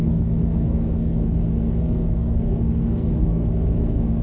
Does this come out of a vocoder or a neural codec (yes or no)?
yes